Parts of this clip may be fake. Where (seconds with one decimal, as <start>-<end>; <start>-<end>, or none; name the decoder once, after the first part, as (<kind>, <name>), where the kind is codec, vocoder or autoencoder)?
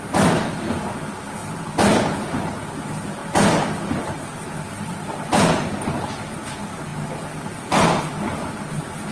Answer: 4.7-5.4 (vocoder, BigVGAN v2)